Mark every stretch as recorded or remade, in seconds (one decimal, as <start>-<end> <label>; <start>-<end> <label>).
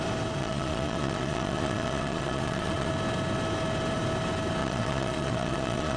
0.0-0.4 recorded; 0.4-2.9 remade; 2.9-4.6 recorded; 4.6-6.0 remade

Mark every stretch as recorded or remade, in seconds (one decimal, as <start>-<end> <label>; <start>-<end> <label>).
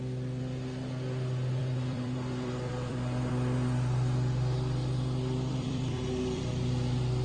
0.0-1.6 recorded; 1.6-3.3 remade; 3.3-5.5 recorded; 5.5-6.5 remade; 6.5-7.2 recorded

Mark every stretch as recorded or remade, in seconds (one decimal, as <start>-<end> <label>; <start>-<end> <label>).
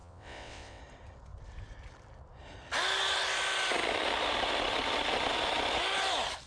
0.0-0.8 remade; 0.8-6.5 recorded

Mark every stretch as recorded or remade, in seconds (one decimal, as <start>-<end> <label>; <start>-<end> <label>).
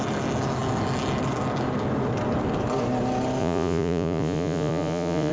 0.0-3.4 recorded; 3.4-5.3 remade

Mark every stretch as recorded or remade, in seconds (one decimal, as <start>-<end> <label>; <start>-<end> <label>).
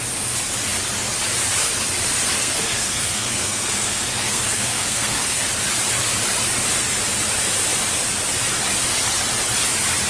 0.0-2.4 recorded; 2.4-5.5 remade; 5.5-10.1 recorded